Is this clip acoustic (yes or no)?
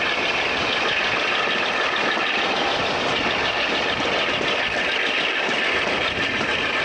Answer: yes